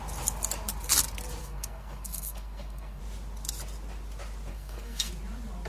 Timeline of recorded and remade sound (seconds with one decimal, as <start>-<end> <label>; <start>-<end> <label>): 0.0-1.4 recorded; 1.4-3.0 remade; 3.0-4.5 recorded; 4.5-5.1 remade; 5.1-5.7 recorded